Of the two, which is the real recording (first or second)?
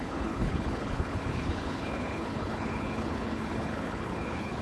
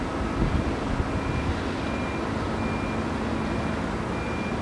second